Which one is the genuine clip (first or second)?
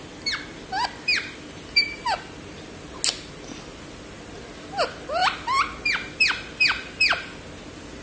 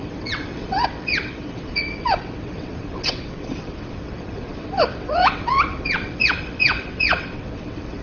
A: first